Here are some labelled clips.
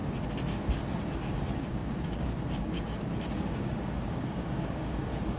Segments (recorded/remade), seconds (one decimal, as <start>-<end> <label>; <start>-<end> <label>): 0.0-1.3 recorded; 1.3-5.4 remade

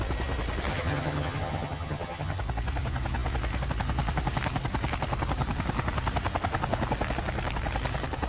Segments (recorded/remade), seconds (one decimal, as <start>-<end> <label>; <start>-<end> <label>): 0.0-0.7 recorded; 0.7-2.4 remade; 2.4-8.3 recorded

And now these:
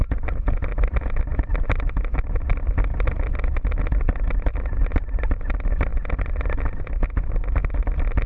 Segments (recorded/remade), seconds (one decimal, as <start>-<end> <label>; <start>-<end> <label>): 0.0-1.3 recorded; 1.3-2.5 remade; 2.5-2.9 recorded; 2.9-3.8 remade; 3.8-8.3 recorded